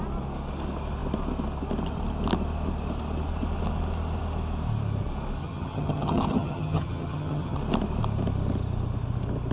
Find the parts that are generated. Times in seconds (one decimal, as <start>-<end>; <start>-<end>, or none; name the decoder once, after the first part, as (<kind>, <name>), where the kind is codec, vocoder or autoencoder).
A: 5.4-7.6 (vocoder, HiFi-GAN)